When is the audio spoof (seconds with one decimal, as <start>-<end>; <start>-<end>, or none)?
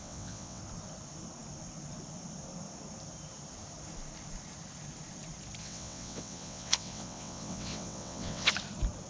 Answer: 0.0-0.6; 5.6-8.5